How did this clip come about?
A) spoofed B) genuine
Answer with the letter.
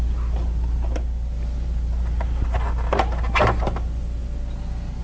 B